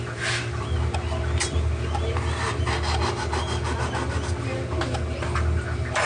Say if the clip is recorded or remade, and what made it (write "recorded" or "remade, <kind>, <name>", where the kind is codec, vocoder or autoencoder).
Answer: recorded